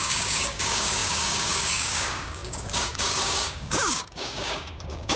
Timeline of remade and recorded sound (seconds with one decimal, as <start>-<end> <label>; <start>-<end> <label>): 0.0-5.2 remade